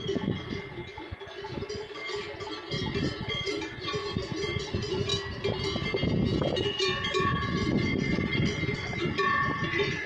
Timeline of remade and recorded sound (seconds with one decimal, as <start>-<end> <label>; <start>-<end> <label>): 0.0-2.0 remade; 2.0-3.0 recorded; 3.0-5.1 remade; 5.1-6.6 recorded; 6.6-10.1 remade